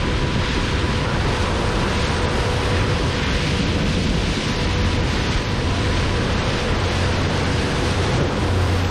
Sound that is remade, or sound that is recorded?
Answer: remade